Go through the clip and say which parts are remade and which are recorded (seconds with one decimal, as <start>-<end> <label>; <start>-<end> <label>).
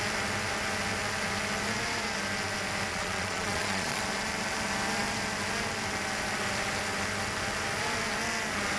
0.0-2.9 recorded; 2.9-4.0 remade; 4.0-8.8 recorded